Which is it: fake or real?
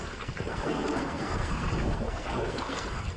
fake